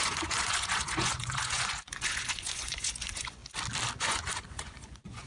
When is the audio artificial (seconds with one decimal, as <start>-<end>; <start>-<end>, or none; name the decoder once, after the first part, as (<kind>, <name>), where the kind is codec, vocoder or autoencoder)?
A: 0.0-3.4 (vocoder, Vocos); 4.0-5.3